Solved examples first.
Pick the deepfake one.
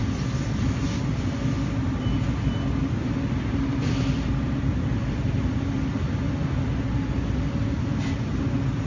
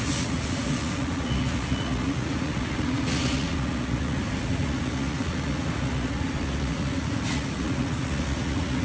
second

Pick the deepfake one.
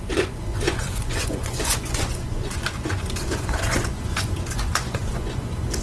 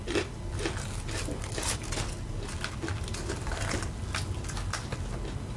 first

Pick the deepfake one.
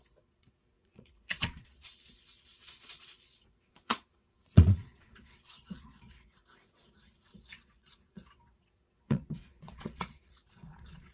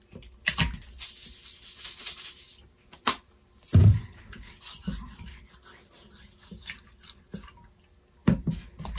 first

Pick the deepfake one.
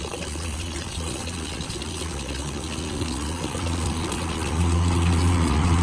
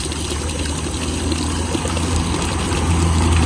first